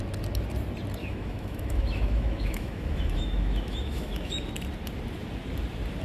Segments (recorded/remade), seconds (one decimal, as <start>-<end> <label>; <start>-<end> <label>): 0.0-1.0 recorded; 1.0-4.5 remade; 4.5-6.0 recorded